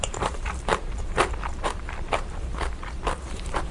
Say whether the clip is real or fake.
fake